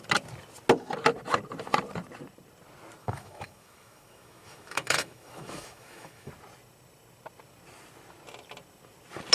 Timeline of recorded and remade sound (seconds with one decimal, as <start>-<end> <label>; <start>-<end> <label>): 0.0-3.0 recorded; 3.0-6.3 remade; 6.3-9.3 recorded